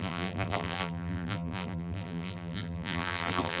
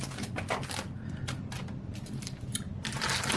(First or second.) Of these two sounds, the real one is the second